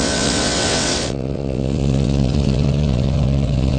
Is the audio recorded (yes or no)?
no